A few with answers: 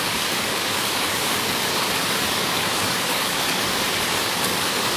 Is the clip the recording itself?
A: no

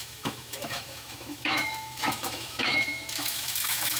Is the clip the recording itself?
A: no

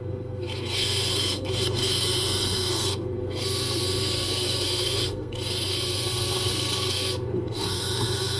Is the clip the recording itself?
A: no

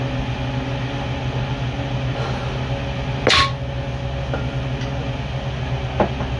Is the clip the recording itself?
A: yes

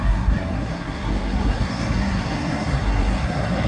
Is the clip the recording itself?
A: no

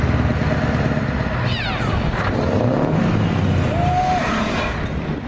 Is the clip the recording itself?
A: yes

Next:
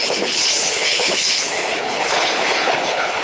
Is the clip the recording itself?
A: no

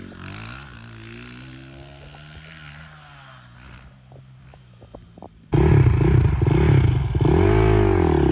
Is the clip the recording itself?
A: yes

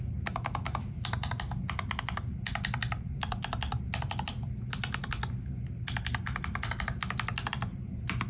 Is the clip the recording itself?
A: yes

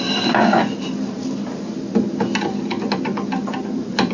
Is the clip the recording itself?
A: yes